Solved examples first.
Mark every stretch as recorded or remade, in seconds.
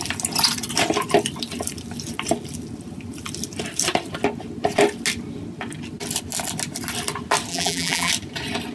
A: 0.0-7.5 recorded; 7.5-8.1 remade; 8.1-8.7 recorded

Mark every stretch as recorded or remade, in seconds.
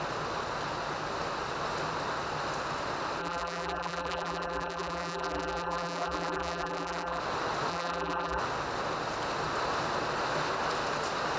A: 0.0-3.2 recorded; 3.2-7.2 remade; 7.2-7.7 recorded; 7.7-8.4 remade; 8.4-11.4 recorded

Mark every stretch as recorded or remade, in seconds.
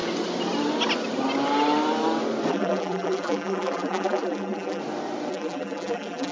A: 0.0-2.5 recorded; 2.5-4.8 remade; 4.8-5.3 recorded; 5.3-6.3 remade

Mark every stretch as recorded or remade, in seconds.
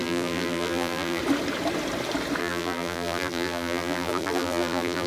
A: 0.0-1.2 remade; 1.2-2.4 recorded; 2.4-5.1 remade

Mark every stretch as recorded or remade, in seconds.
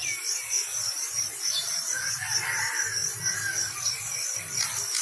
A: 0.0-2.6 remade; 2.6-5.0 recorded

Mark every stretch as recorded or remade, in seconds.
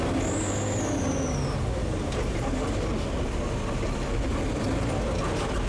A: 0.0-4.1 recorded; 4.1-4.6 remade; 4.6-5.7 recorded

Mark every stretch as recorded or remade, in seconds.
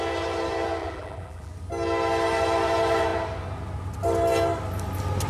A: 0.0-0.8 recorded; 0.8-1.5 remade; 1.5-5.3 recorded